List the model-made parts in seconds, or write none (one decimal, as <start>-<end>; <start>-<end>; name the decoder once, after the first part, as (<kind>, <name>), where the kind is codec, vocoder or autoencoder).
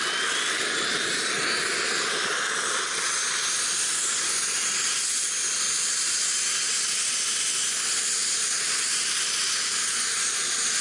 none